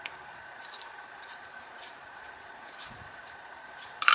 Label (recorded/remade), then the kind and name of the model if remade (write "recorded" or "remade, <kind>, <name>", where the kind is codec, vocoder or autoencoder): remade, vocoder, BigVGAN v2